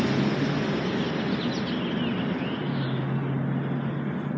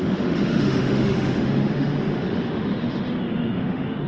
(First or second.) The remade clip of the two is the second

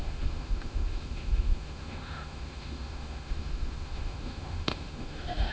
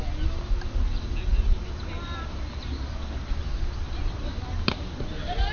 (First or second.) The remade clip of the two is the first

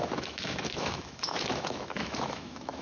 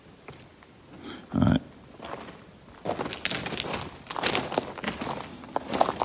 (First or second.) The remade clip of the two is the first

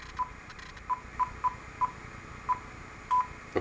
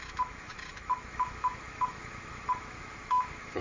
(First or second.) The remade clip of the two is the second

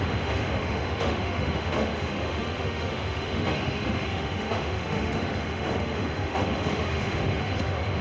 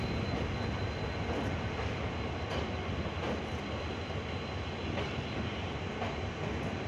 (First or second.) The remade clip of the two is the first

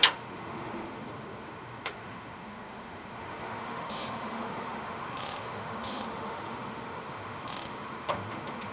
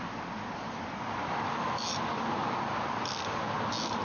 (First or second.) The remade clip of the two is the first